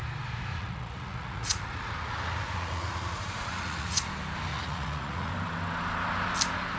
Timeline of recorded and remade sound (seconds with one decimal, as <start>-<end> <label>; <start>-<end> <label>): 0.0-0.5 recorded; 0.5-4.1 remade; 4.1-4.5 recorded; 4.5-5.3 remade; 5.3-6.8 recorded